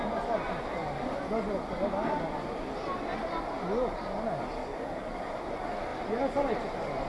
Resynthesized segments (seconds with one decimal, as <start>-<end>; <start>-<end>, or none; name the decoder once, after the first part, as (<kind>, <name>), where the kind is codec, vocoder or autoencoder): 4.6-5.2 (codec, DAC)